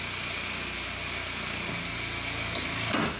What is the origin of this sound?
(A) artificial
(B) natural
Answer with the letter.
B